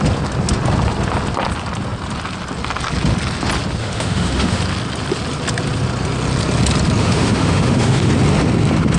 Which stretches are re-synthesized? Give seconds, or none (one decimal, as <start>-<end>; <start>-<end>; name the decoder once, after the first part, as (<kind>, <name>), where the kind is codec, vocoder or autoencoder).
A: 3.8-4.6 (autoencoder, DAC-VAE); 7.0-8.1